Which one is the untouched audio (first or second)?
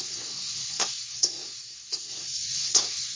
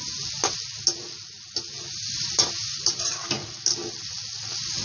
second